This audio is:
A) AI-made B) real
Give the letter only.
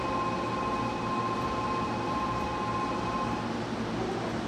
B